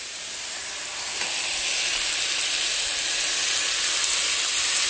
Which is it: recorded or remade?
recorded